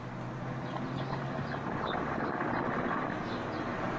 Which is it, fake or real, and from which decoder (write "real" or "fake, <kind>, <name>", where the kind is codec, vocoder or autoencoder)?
real